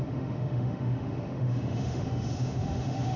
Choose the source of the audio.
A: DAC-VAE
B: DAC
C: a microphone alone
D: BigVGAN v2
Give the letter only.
A